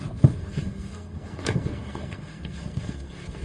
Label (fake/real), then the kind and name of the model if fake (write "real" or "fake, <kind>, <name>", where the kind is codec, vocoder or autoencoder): fake, codec, SNAC